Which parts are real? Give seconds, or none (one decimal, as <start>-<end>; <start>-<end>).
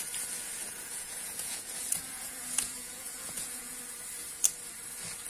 0.0-0.6; 3.8-5.3